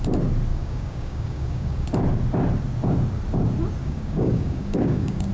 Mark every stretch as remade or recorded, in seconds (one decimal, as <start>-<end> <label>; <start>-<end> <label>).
0.0-0.5 recorded; 0.5-1.9 remade; 1.9-3.8 recorded; 3.8-5.3 remade